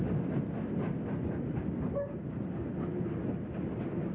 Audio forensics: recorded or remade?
recorded